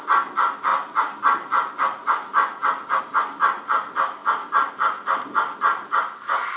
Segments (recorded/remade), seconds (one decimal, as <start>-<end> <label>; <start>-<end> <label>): 0.0-0.7 recorded; 0.7-3.0 remade; 3.0-4.2 recorded; 4.2-4.7 remade; 4.7-6.6 recorded